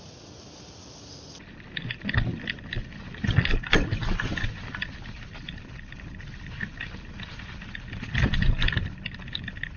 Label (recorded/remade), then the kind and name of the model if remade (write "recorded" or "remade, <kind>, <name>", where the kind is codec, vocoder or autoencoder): recorded